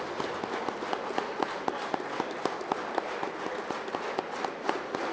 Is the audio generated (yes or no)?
no